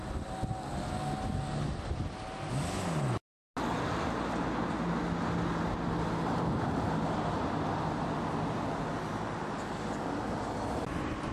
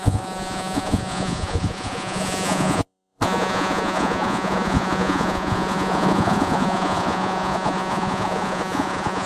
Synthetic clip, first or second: second